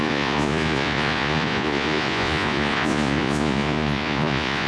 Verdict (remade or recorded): remade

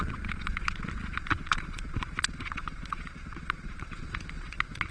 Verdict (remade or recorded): remade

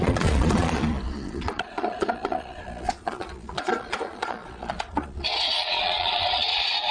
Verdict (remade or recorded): remade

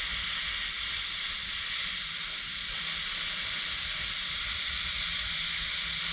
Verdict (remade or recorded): recorded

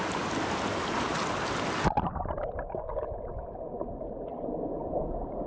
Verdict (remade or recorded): recorded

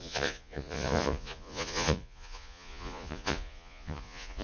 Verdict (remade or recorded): remade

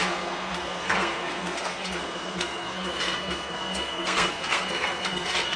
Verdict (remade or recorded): remade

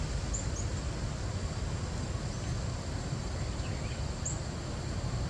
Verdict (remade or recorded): recorded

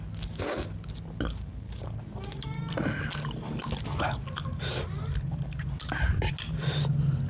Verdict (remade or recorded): recorded